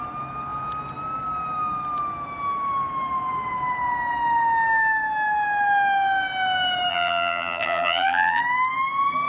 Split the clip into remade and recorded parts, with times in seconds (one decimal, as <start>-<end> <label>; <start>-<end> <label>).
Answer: 0.0-6.9 recorded; 6.9-8.4 remade; 8.4-9.3 recorded